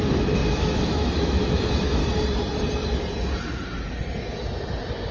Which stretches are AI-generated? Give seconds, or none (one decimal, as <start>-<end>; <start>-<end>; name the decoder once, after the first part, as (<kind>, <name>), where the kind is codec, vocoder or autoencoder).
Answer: 0.0-2.0 (autoencoder, DAC-VAE)